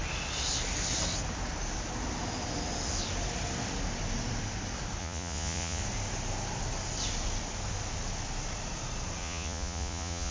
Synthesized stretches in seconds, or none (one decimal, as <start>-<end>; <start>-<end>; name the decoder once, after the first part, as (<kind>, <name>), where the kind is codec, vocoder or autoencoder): 5.0-5.8 (vocoder, Vocos); 9.2-10.3